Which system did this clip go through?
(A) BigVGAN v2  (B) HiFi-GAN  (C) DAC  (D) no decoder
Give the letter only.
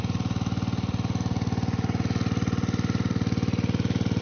A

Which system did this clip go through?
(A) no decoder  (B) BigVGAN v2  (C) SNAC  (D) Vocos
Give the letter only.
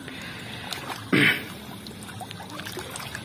A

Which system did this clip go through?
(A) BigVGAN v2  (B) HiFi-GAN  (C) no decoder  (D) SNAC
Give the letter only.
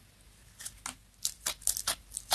C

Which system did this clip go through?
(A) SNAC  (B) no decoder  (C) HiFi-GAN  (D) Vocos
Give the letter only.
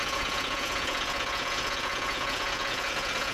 D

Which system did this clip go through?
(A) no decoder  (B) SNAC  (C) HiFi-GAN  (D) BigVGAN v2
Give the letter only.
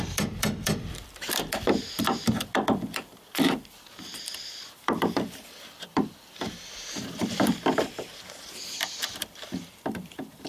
D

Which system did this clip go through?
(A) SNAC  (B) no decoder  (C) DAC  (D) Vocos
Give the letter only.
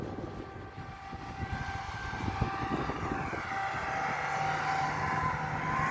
B